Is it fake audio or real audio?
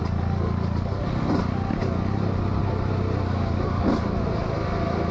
real